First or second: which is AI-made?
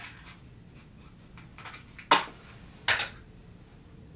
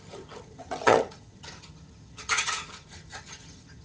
second